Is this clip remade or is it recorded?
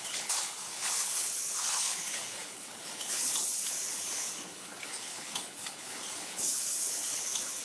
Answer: remade